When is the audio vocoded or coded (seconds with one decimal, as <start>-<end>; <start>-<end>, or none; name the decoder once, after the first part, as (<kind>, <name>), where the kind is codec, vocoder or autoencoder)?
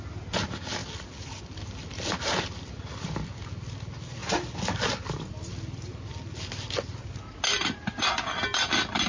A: none